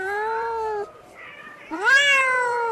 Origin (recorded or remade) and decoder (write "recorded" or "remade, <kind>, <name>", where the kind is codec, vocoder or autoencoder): remade, vocoder, BigVGAN v2